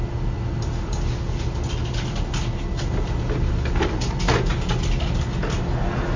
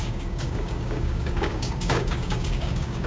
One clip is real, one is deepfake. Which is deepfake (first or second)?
second